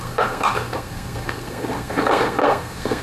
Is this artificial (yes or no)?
yes